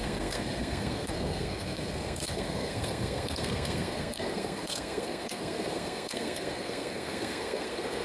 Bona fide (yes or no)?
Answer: no